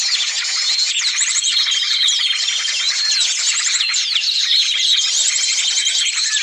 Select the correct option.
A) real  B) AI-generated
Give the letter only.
B